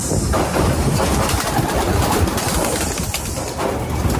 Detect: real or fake real